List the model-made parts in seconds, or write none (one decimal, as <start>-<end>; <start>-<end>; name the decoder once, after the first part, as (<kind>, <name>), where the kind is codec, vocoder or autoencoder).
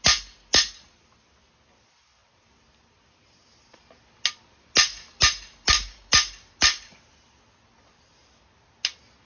none